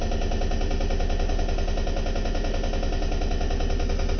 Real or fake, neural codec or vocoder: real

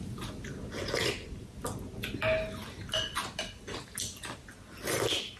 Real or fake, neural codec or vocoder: real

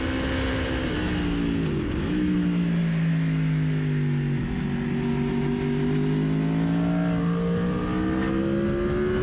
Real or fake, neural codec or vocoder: real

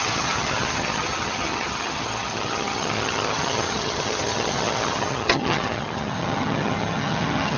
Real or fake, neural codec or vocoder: fake, vocoder, HiFi-GAN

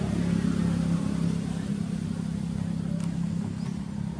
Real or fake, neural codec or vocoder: real